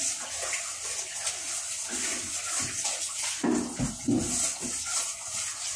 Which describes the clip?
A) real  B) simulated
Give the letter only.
A